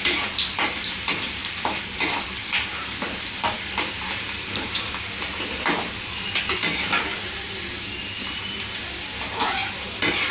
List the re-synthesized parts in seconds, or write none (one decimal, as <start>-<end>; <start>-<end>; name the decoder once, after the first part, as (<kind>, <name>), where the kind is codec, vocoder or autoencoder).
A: 0.0-9.6 (vocoder, BigVGAN v2)